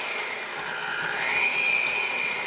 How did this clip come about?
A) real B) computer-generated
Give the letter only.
A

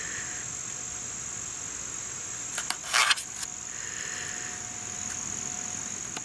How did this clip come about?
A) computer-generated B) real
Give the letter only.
B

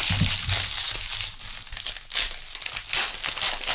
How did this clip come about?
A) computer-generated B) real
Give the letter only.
B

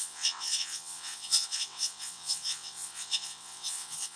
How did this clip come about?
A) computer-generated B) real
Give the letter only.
A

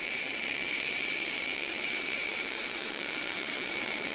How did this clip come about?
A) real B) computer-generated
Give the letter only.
B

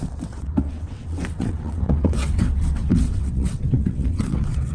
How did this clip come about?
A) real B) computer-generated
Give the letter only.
B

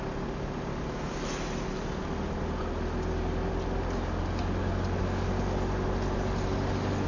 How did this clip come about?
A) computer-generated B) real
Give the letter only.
B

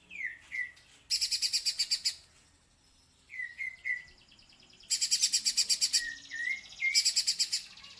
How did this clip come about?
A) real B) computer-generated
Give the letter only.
A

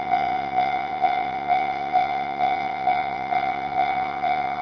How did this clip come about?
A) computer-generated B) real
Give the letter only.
A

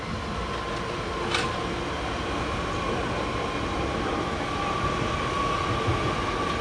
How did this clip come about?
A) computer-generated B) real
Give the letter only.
B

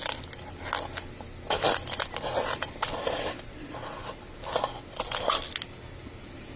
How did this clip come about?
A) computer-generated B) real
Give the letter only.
B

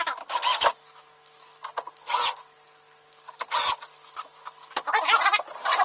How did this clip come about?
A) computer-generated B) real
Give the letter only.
B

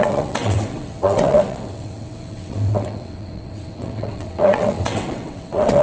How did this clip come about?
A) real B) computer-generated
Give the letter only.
B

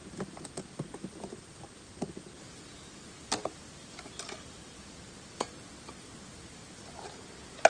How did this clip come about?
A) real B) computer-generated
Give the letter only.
A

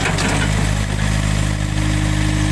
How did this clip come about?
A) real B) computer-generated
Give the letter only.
A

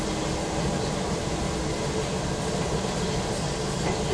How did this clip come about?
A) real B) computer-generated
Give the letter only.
A